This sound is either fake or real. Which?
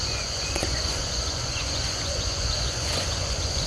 fake